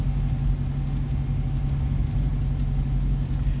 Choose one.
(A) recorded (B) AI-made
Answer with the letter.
A